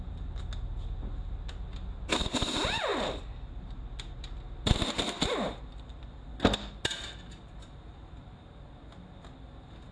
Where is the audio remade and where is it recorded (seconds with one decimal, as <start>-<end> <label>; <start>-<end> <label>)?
0.0-9.9 recorded